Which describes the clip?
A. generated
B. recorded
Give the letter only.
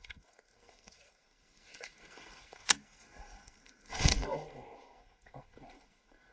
A